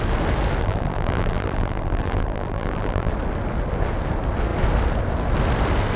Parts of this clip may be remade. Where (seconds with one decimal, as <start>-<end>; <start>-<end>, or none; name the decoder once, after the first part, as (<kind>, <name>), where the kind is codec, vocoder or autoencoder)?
0.6-3.1 (vocoder, BigVGAN v2)